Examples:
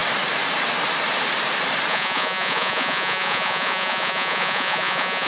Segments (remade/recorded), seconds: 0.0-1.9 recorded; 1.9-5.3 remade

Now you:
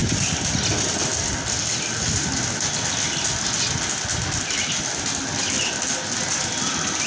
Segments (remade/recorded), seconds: 0.0-7.1 recorded